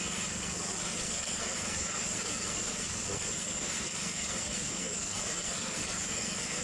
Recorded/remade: remade